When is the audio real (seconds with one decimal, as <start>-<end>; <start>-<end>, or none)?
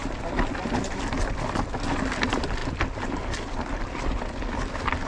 0.0-5.1